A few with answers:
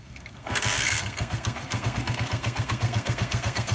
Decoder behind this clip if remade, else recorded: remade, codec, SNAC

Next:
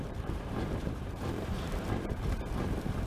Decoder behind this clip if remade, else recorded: remade, vocoder, BigVGAN v2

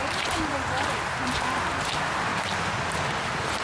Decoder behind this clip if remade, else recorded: recorded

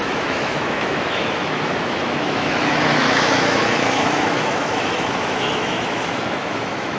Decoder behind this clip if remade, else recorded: remade, autoencoder, DAC-VAE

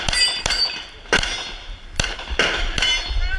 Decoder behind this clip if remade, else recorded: remade, vocoder, BigVGAN v2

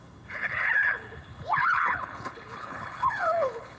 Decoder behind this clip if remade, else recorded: remade, codec, HILCodec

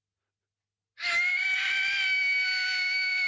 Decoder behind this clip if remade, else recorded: recorded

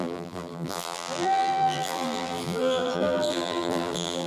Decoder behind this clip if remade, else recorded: remade, vocoder, BigVGAN v2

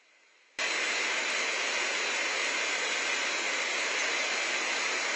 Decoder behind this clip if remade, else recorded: recorded